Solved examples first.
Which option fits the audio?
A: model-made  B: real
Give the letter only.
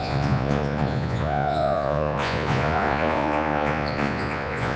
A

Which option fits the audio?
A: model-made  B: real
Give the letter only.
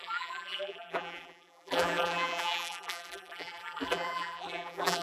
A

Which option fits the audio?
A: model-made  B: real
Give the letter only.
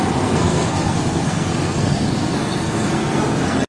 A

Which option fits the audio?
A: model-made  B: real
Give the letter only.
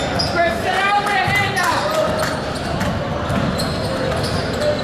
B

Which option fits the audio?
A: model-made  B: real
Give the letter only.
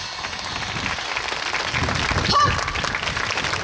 B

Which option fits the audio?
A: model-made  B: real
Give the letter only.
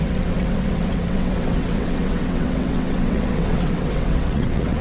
A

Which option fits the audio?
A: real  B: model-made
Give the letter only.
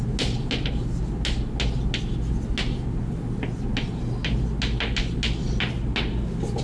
A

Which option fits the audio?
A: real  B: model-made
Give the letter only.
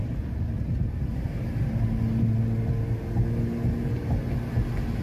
A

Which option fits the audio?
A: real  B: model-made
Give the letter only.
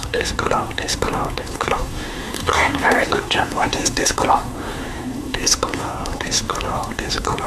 B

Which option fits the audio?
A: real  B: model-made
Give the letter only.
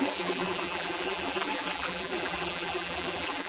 B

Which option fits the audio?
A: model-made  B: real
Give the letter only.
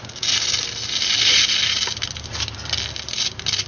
B